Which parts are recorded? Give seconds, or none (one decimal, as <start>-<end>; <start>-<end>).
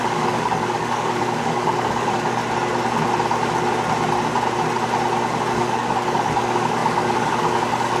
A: 2.4-5.5